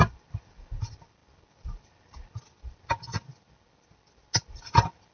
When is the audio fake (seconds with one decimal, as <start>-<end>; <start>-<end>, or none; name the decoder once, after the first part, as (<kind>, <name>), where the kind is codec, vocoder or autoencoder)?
none